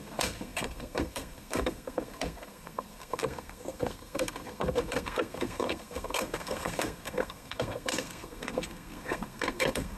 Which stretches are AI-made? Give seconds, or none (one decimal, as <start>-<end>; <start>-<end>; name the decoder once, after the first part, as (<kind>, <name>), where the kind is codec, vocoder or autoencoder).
0.0-10.0 (codec, SNAC)

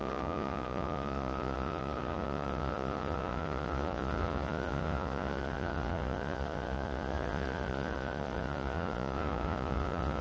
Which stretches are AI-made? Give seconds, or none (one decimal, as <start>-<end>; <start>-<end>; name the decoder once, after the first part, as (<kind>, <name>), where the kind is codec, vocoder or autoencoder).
0.0-10.2 (vocoder, Vocos)